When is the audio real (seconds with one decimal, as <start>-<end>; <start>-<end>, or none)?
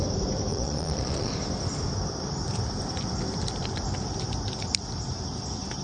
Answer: 0.0-0.5; 1.3-5.8